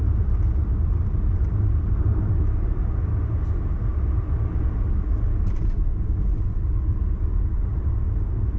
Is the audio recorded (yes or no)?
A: yes